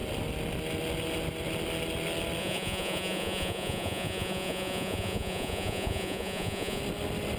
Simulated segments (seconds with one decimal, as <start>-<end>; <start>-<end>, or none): 2.4-6.8